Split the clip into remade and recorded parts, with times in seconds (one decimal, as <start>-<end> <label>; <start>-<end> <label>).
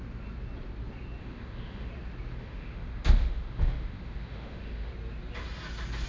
0.0-1.2 recorded; 1.2-1.9 remade; 1.9-2.3 recorded; 2.3-4.9 remade; 4.9-6.1 recorded